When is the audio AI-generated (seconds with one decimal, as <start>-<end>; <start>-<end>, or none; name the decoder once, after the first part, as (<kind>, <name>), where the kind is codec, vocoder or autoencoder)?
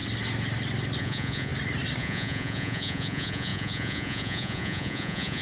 1.0-1.5 (vocoder, Vocos); 2.0-5.4